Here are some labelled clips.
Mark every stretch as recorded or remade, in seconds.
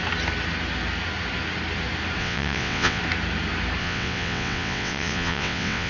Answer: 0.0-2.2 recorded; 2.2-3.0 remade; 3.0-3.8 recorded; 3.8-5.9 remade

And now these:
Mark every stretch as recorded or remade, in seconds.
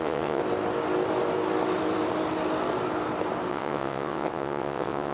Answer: 0.0-0.4 remade; 0.4-3.5 recorded; 3.5-5.1 remade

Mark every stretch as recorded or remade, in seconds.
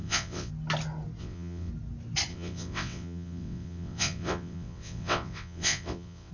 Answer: 0.0-0.5 remade; 0.5-1.2 recorded; 1.2-1.7 remade; 1.7-2.3 recorded; 2.3-6.3 remade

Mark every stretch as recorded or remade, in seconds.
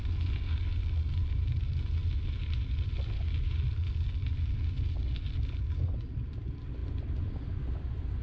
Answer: 0.0-8.2 recorded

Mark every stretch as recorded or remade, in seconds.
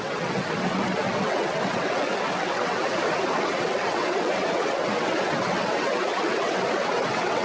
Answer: 0.0-7.4 remade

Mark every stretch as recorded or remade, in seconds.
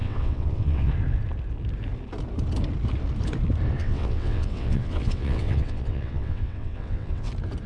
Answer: 0.0-0.9 remade; 0.9-3.8 recorded; 3.8-7.3 remade; 7.3-7.7 recorded